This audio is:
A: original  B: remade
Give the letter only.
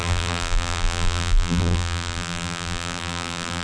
B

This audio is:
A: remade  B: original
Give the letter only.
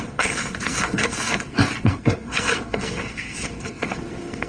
A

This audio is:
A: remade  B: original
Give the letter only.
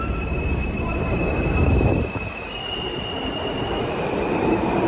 A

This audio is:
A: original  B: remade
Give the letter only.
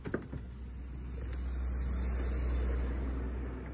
A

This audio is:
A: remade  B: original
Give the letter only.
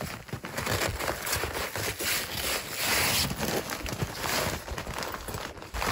B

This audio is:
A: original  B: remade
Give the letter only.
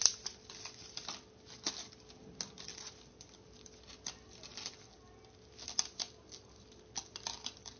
A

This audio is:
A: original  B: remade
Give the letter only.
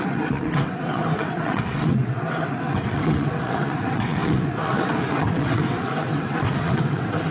B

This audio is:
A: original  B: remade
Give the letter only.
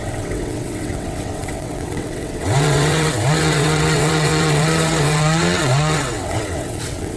B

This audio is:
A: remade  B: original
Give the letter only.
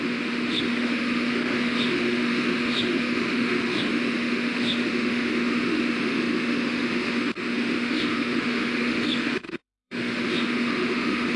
A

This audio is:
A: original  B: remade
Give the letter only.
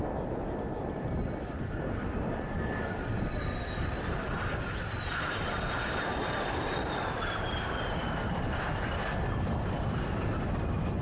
A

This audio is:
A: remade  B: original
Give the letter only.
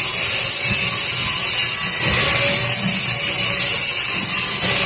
B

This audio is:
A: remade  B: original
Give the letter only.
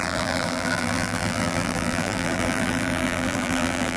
A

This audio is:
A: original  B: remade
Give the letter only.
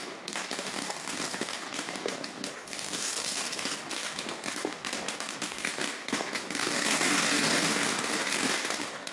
B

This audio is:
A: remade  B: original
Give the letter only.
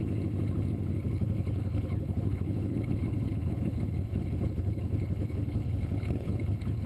A